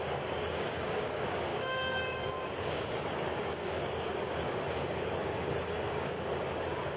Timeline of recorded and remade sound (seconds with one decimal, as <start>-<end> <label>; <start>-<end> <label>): 0.0-7.0 remade